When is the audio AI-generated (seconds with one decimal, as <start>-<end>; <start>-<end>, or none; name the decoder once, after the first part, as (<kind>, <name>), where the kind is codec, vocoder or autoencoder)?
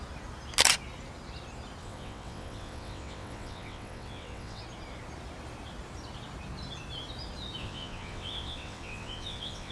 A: 1.8-4.6 (vocoder, WaveNeXt); 7.6-9.7